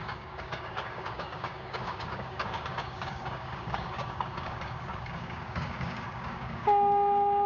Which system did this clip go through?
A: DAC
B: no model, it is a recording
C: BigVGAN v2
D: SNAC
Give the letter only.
A